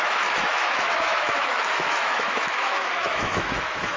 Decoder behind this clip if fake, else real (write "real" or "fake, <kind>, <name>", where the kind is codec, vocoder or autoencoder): fake, autoencoder, DAC-VAE